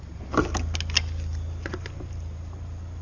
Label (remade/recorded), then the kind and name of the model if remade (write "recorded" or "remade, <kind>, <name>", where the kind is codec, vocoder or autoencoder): recorded